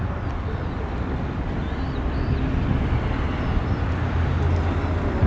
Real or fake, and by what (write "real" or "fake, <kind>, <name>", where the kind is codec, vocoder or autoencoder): real